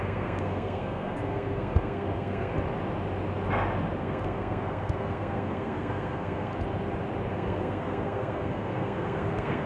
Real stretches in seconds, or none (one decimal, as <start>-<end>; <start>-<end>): 2.5-4.0; 6.5-7.3

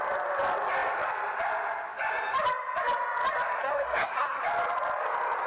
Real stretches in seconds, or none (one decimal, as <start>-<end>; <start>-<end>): 0.0-3.6; 4.4-5.5

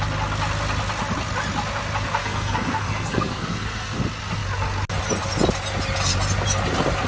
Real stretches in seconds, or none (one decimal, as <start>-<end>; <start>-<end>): 0.0-2.2; 4.0-7.1

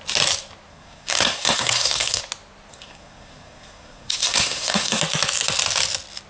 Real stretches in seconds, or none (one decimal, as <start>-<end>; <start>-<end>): 0.0-0.7; 2.2-2.7; 5.0-6.3

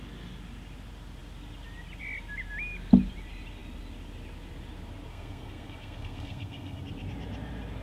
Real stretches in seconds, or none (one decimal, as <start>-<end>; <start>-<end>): 0.0-5.1; 6.8-7.8

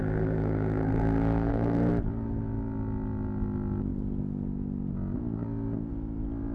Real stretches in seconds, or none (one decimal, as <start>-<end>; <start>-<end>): 1.9-6.5

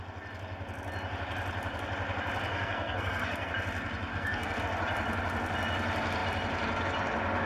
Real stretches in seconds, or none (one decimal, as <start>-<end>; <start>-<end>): 0.0-2.5; 3.5-4.1; 4.6-7.5

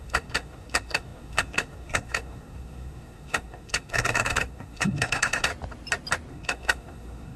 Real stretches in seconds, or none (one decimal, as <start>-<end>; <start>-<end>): 5.5-6.3